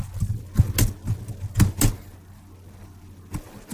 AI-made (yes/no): no